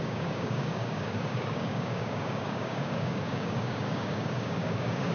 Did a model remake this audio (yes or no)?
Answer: yes